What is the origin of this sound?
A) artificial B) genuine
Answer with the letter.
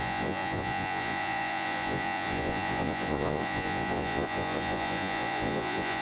A